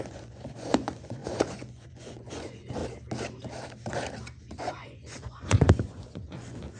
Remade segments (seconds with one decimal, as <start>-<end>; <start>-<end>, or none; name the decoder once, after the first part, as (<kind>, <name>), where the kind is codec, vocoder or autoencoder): 0.0-2.8 (vocoder, Vocos); 4.4-6.8